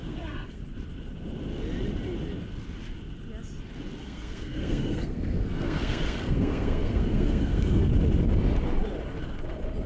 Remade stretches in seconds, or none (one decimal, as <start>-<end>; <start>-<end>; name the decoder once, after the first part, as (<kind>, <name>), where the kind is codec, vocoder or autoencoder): 0.0-0.6 (codec, SNAC); 4.0-7.9